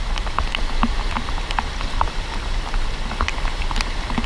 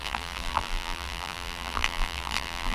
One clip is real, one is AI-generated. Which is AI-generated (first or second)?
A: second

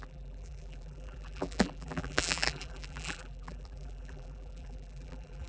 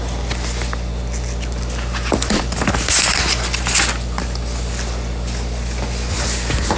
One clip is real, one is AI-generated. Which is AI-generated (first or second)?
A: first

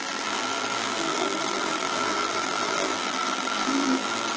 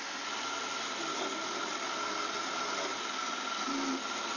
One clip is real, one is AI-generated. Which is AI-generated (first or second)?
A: first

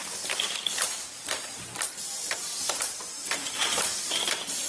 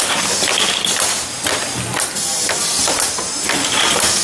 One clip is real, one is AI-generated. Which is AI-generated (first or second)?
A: first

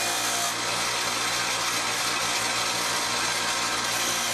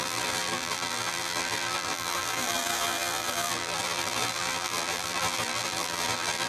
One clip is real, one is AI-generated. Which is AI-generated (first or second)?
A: second